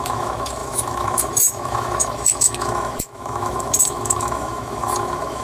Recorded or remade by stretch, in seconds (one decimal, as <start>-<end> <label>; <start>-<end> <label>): 0.0-5.4 remade